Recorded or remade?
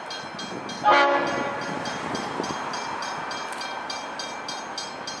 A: recorded